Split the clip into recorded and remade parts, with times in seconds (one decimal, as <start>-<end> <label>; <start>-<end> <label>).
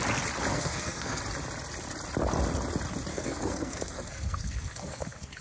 0.0-0.5 recorded; 0.5-1.2 remade; 1.2-3.1 recorded; 3.1-5.4 remade